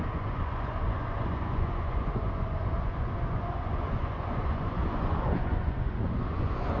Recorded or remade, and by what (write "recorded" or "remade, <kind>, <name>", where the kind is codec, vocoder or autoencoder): remade, vocoder, Vocos